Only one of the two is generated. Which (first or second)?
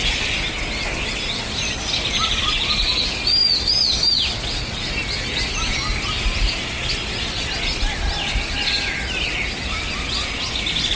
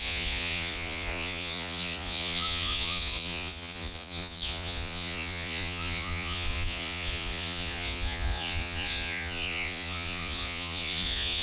second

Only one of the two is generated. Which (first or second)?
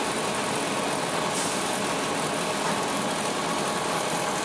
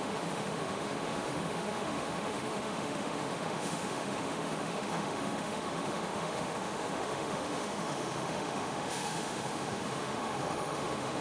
second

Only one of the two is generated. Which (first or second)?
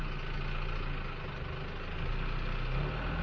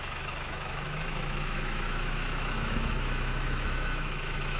second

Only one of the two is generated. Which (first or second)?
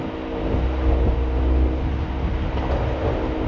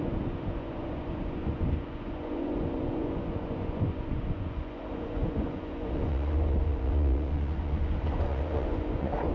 second